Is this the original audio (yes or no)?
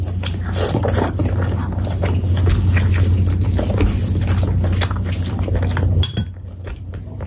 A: yes